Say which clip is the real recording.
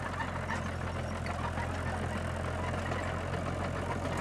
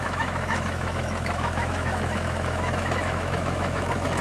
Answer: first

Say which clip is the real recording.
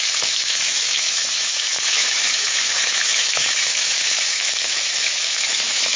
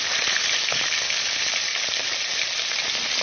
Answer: second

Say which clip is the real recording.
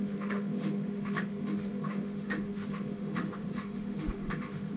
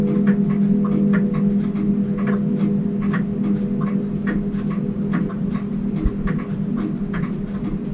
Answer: second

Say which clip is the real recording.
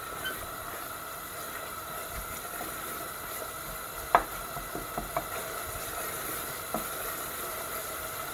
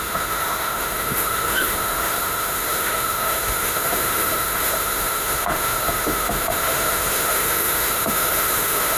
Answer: first